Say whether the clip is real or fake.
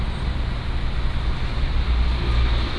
real